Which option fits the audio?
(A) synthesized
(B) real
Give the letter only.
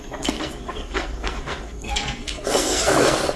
A